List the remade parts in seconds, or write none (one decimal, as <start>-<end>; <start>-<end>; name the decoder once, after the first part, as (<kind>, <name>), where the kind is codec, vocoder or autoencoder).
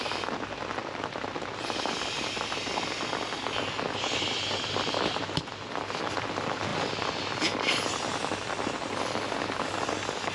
none